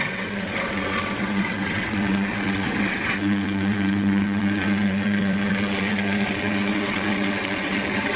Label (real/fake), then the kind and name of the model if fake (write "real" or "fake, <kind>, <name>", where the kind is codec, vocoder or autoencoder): fake, vocoder, WaveNeXt